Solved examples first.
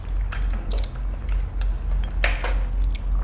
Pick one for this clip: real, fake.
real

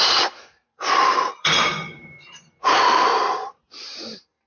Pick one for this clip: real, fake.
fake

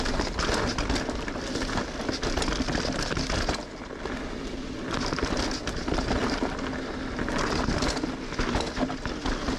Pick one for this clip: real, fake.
real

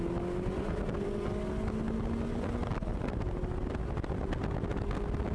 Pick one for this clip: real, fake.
real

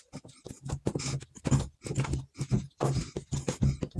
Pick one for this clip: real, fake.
real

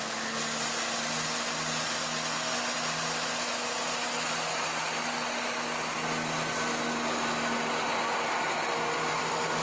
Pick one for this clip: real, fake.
real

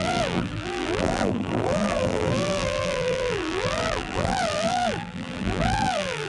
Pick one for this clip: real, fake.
fake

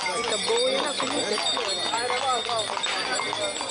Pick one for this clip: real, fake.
real